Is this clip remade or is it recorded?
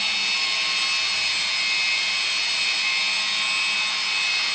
recorded